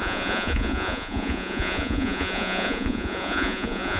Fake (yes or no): yes